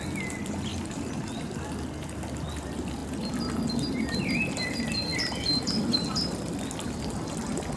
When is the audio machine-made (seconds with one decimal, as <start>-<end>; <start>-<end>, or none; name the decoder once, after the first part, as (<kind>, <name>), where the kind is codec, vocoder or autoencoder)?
0.7-1.5 (vocoder, BigVGAN v2); 5.1-7.0